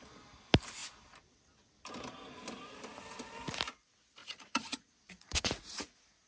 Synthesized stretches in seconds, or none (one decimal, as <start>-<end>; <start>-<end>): 4.2-6.3

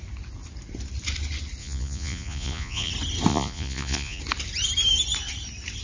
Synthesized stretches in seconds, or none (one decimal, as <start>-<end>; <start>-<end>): 1.6-2.9; 3.3-4.2

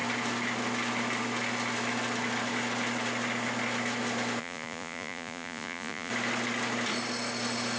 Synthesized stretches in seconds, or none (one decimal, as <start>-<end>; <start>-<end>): 4.4-6.1

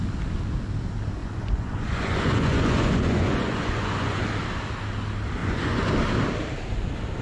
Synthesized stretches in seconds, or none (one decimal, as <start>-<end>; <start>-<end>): 1.2-4.2; 5.4-5.9

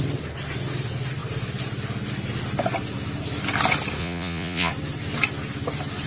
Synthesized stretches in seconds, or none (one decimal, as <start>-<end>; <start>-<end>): 4.0-4.7